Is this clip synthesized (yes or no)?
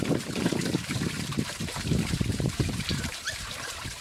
yes